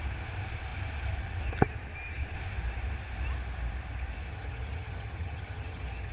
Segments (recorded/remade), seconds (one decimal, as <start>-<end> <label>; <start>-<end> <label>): 0.0-4.3 recorded; 4.3-6.1 remade